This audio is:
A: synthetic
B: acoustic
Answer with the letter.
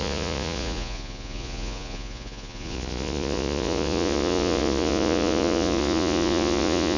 A